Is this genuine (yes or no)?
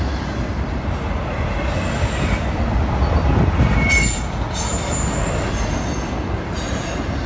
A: yes